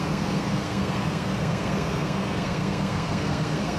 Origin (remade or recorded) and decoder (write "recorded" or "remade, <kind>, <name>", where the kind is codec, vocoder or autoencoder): remade, codec, SNAC